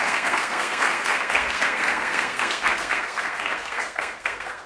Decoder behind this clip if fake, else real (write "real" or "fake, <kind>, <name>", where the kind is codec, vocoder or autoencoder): fake, codec, SNAC